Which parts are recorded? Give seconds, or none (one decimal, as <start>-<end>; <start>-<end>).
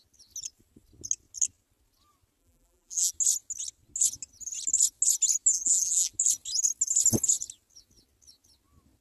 0.0-2.4; 3.1-5.5; 6.1-9.0